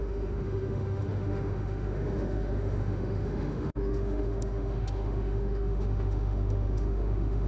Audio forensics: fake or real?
fake